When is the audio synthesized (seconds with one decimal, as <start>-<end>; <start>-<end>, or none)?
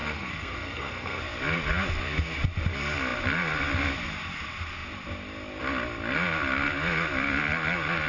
0.0-1.2